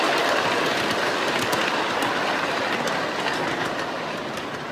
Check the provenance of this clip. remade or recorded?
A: recorded